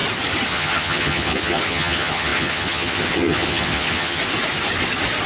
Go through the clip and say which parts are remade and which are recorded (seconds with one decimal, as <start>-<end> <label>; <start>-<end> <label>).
0.0-0.5 recorded; 0.5-4.2 remade; 4.2-5.3 recorded